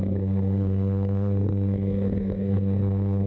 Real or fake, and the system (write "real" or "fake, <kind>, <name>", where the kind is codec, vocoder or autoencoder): fake, codec, SNAC